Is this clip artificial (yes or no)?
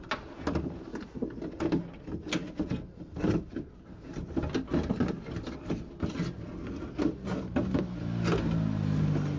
no